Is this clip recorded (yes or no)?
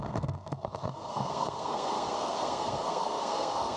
no